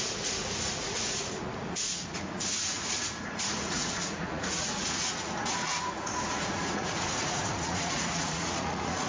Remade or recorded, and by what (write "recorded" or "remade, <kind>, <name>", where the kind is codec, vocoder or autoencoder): remade, vocoder, Vocos